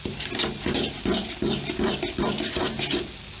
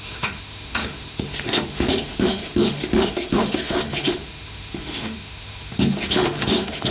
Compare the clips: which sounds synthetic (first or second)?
second